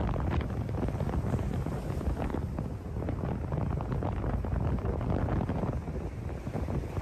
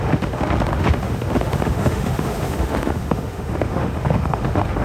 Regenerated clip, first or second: second